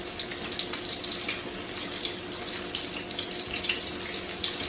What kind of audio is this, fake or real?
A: real